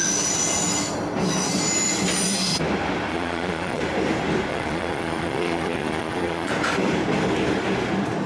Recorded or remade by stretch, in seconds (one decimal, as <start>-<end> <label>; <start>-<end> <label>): 0.0-3.1 recorded; 3.1-3.8 remade; 3.8-4.5 recorded; 4.5-6.5 remade; 6.5-8.3 recorded